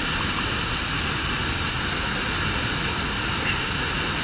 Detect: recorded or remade recorded